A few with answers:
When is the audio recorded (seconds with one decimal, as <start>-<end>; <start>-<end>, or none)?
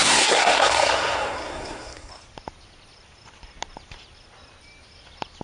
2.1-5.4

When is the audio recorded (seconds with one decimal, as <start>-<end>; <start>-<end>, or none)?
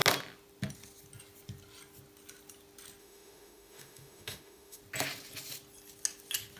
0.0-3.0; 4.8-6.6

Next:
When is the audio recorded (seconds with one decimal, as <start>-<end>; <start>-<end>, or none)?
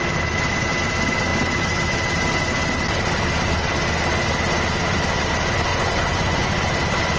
0.0-5.7; 6.5-7.2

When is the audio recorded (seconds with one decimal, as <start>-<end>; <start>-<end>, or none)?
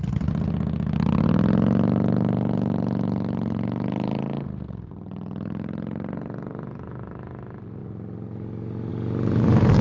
0.0-9.8